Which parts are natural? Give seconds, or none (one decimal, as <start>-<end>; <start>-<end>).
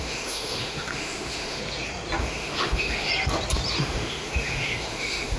1.6-2.2; 3.1-3.8